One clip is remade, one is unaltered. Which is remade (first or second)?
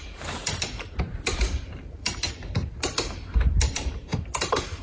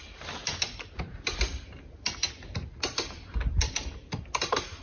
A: first